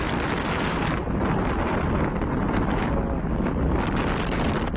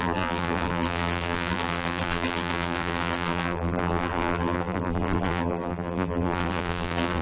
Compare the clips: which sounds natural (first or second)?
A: first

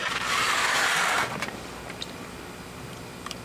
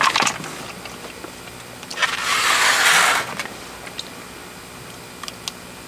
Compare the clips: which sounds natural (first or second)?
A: second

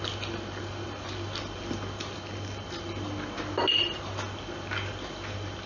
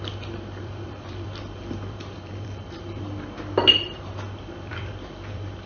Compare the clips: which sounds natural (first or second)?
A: first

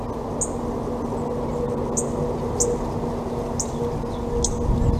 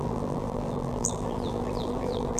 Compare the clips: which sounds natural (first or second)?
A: first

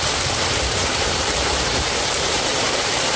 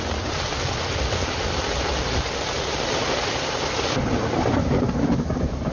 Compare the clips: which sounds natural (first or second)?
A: second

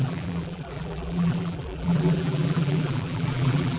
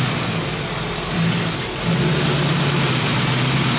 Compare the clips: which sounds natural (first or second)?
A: second